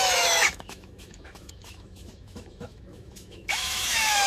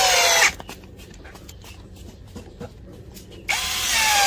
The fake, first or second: first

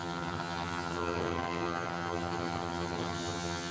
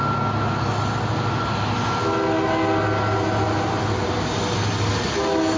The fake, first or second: first